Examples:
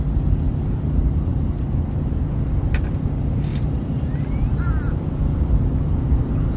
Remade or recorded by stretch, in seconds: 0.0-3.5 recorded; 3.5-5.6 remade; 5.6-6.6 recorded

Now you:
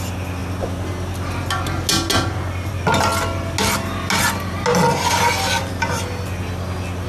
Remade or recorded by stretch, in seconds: 0.0-7.1 recorded